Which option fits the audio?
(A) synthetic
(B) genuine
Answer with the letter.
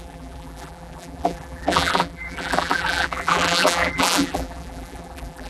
A